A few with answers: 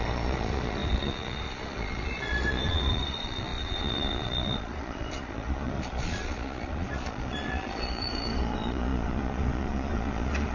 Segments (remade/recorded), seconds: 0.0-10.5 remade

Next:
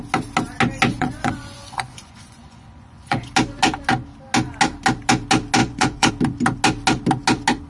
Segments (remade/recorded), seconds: 0.0-0.9 recorded; 0.9-3.3 remade; 3.3-5.6 recorded; 5.6-6.1 remade; 6.1-7.7 recorded

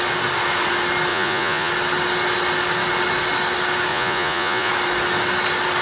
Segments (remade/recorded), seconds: 0.0-1.1 recorded; 1.1-1.7 remade; 1.7-3.9 recorded; 3.9-4.7 remade; 4.7-5.8 recorded

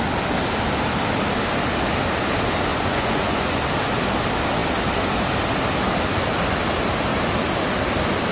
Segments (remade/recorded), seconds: 0.0-2.7 recorded; 2.7-3.6 remade; 3.6-8.3 recorded

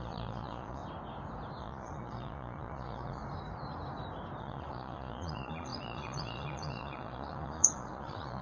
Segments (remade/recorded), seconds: 0.0-0.8 remade; 0.8-1.6 recorded; 1.6-3.2 remade; 3.2-4.4 recorded; 4.4-8.4 remade

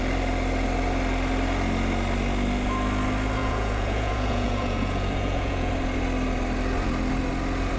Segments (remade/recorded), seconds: 0.0-3.4 recorded; 3.4-5.7 remade; 5.7-7.8 recorded

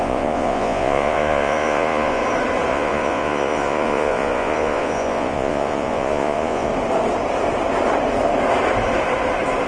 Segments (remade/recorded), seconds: 0.0-2.2 remade; 2.2-2.7 recorded; 2.7-6.7 remade; 6.7-9.7 recorded

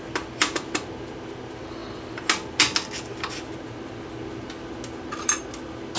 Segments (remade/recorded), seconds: 0.0-6.0 recorded